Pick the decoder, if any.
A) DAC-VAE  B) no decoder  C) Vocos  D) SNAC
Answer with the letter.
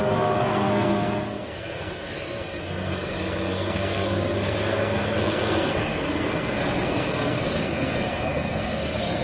D